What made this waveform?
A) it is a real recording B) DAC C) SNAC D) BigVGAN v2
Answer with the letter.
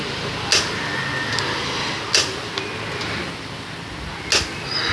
A